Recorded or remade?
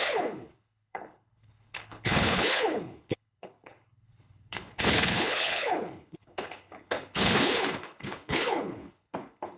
remade